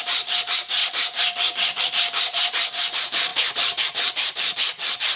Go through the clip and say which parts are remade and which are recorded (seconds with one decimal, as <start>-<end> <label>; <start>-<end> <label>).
0.0-0.8 remade; 0.8-1.8 recorded; 1.8-5.2 remade